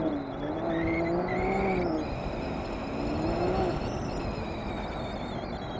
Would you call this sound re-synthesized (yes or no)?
no